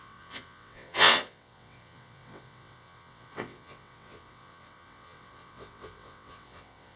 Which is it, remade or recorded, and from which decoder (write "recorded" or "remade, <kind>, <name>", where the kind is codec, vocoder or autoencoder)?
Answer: remade, vocoder, WaveNeXt